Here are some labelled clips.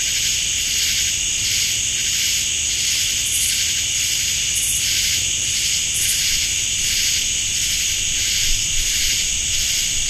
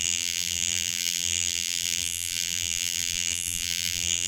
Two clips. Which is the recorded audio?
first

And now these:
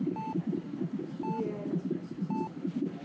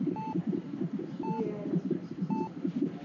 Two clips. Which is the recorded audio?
first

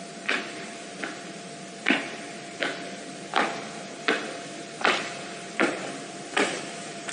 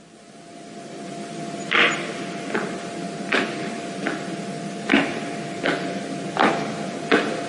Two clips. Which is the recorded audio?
second